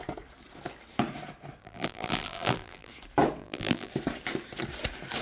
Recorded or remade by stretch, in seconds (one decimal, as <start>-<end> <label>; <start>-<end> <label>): 0.0-1.6 recorded; 1.6-2.9 remade; 2.9-3.4 recorded; 3.4-3.9 remade; 3.9-5.2 recorded